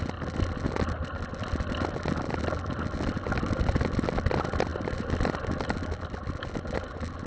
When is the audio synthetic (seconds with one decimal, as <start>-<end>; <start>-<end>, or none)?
none